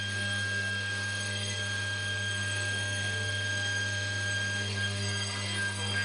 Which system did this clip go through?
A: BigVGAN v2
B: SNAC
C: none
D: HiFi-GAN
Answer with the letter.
B